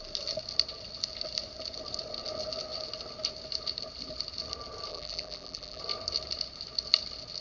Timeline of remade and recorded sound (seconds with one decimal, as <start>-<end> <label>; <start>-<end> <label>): 0.0-4.9 recorded; 4.9-5.8 remade; 5.8-7.4 recorded